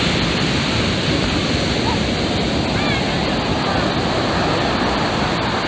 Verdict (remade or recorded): recorded